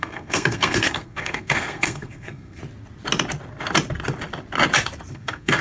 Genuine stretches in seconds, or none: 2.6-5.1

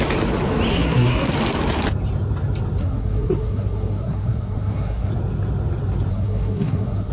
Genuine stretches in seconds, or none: 0.0-0.7; 1.3-2.8; 5.1-6.1

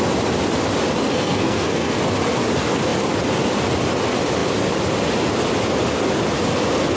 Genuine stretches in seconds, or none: 0.0-1.1; 2.0-7.0